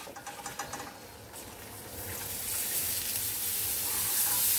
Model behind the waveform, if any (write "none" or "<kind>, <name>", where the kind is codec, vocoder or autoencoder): none